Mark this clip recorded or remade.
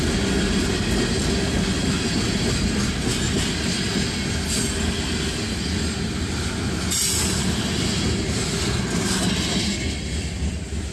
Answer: recorded